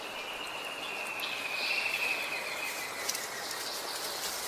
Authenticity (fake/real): real